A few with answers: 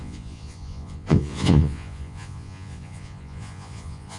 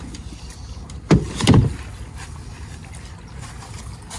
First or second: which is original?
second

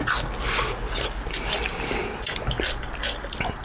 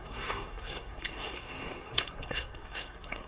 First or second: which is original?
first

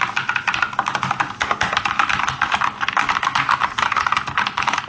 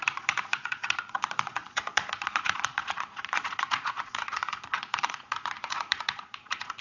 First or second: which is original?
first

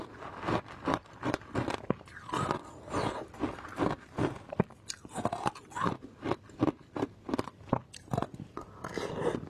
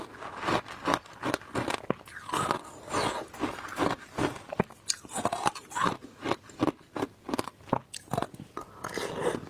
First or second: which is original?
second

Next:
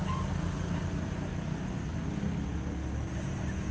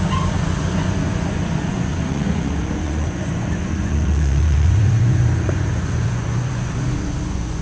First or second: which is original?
first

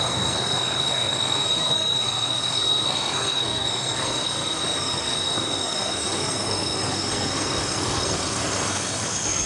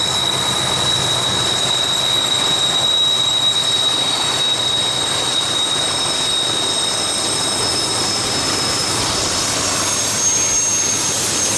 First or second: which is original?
second